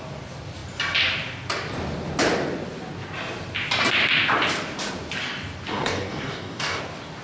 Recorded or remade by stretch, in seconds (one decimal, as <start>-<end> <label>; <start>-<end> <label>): 0.0-5.7 recorded; 5.7-6.8 remade; 6.8-7.2 recorded